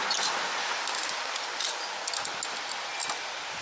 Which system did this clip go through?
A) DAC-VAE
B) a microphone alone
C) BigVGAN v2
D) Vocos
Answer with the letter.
B